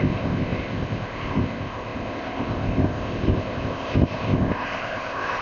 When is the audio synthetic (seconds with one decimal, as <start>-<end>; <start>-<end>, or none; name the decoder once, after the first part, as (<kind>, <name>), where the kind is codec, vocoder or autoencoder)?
0.0-5.4 (codec, ZipCodec)